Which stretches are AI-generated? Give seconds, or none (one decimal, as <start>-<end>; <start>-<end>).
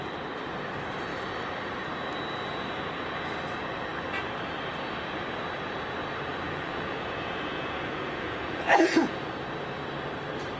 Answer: 6.3-9.3